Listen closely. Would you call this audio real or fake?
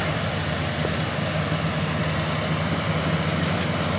real